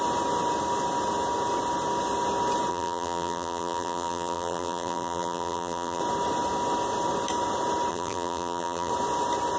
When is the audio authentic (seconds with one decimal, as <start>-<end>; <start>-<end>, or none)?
0.0-2.7; 6.0-7.9; 8.9-9.6